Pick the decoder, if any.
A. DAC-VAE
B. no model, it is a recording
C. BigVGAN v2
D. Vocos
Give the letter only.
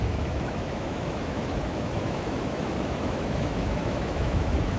A